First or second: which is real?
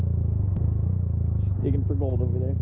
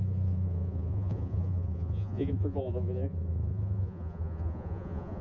first